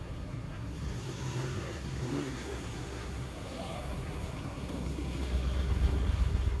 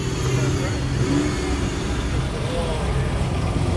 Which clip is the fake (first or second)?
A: first